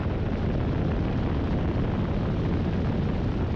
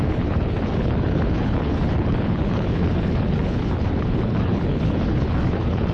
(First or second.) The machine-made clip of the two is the second